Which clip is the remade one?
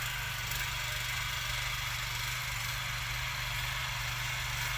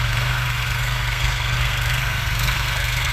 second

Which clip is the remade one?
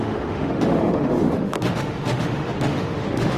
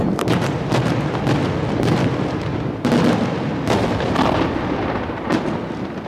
first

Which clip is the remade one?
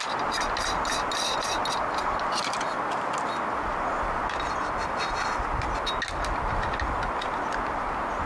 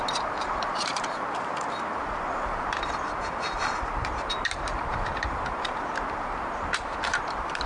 second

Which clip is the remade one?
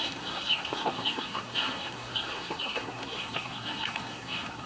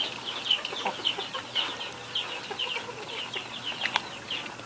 first